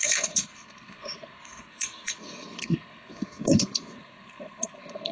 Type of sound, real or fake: fake